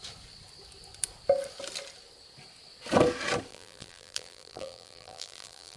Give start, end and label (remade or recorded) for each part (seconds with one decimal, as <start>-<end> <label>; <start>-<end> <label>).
0.0-3.5 recorded; 3.5-5.8 remade